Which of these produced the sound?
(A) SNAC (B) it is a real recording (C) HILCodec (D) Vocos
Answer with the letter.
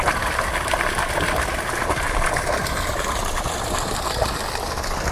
B